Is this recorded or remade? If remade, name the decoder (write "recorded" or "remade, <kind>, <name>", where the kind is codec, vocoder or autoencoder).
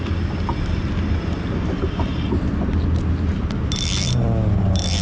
recorded